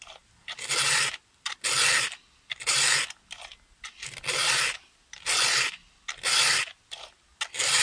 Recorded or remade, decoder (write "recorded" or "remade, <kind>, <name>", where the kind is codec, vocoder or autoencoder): recorded